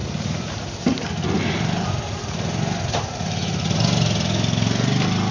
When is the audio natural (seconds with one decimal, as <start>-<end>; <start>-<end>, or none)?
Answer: 0.5-5.3